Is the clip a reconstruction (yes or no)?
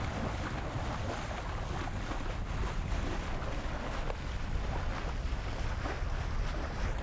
no